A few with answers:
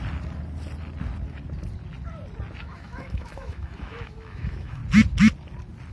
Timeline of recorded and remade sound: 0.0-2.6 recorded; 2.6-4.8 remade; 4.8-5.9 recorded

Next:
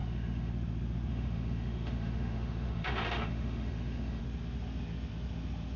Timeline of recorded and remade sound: 0.0-0.5 remade; 0.5-1.1 recorded; 1.1-4.2 remade; 4.2-5.8 recorded